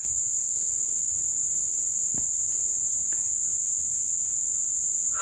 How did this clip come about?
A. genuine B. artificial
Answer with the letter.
A